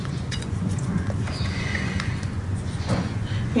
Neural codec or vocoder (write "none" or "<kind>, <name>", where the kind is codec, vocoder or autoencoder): vocoder, Vocos